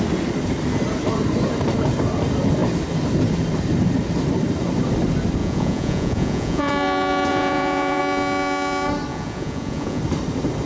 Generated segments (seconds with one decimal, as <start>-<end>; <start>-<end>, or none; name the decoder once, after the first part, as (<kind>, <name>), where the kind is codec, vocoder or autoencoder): 5.4-6.7 (vocoder, Vocos); 7.3-8.0; 9.1-10.0

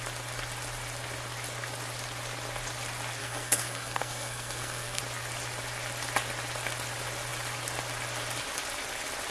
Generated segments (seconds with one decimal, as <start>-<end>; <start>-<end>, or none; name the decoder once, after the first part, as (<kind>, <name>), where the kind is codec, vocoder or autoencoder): 3.2-5.0 (codec, SNAC)